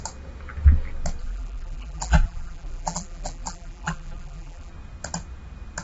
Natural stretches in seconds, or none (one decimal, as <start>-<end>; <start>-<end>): 0.0-1.2; 4.7-5.8